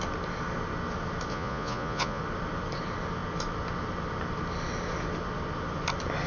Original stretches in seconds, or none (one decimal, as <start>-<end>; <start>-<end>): 0.0-1.3; 2.2-6.3

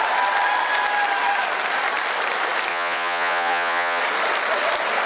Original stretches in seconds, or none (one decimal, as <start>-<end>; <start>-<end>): 0.0-2.7; 4.0-5.1

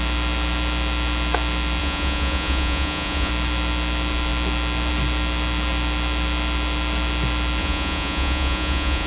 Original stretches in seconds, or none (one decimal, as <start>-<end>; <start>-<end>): 0.0-1.8; 3.3-7.6

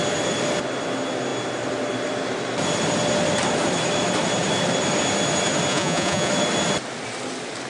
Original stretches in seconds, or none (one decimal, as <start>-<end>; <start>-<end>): 0.0-5.7; 6.3-7.7

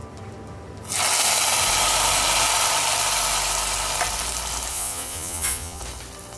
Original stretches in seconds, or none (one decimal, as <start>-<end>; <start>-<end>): 0.0-4.7; 5.8-6.4

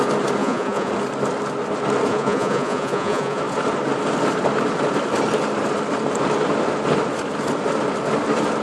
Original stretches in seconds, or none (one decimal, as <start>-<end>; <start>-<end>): 0.0-0.4; 0.9-2.1; 3.4-8.6

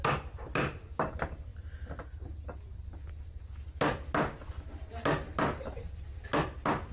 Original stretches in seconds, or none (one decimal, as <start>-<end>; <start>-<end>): 0.0-6.9

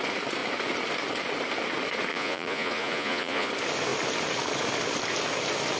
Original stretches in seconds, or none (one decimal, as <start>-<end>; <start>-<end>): 0.0-2.1; 3.5-5.8